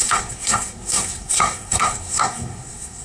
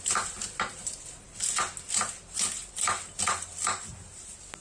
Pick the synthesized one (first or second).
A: first